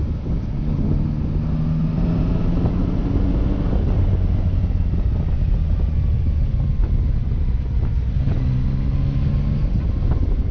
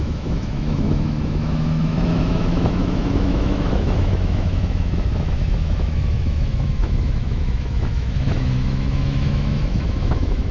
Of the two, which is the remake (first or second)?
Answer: second